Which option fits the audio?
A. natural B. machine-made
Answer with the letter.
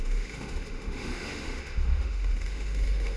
B